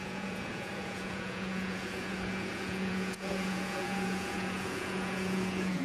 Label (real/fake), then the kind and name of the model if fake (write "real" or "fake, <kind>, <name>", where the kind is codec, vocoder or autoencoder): fake, vocoder, Vocos